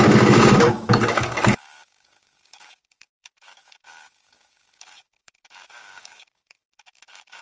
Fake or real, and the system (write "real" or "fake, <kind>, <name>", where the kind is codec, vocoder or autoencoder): fake, codec, DAC